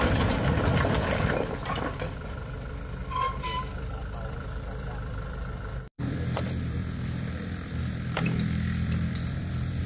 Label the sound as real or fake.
fake